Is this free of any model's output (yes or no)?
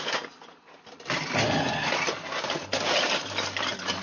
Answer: yes